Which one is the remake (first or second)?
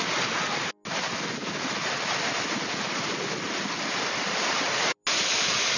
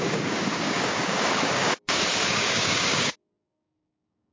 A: second